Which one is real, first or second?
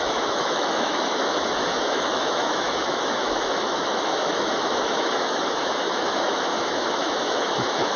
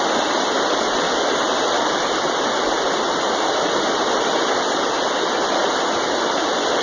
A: second